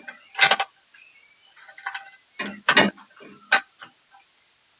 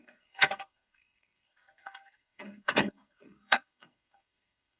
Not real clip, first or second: second